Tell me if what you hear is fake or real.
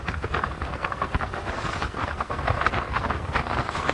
fake